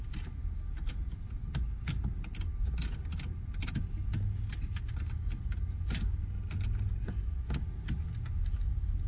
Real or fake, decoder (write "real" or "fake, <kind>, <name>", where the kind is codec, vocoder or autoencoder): real